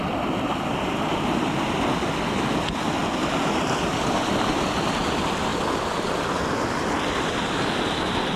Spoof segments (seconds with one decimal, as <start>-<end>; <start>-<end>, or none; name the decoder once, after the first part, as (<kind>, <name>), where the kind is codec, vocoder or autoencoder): none